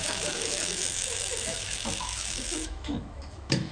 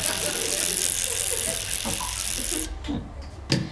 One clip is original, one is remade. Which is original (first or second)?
second